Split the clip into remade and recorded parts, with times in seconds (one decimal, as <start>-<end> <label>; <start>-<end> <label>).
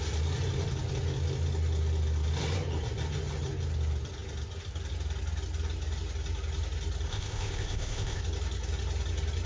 0.0-7.1 recorded; 7.1-8.2 remade; 8.2-9.5 recorded